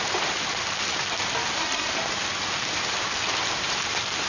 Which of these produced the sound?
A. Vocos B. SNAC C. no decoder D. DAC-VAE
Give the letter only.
C